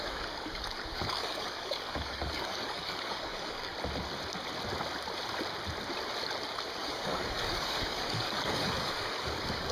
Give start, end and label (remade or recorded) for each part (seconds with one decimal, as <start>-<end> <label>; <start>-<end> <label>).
0.0-3.7 remade; 3.7-6.8 recorded; 6.8-9.7 remade